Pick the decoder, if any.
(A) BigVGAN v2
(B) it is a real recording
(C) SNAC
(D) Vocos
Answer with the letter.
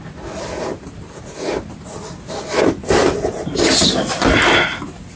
A